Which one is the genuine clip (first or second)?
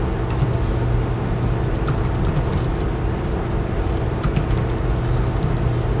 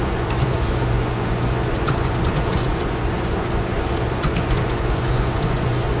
first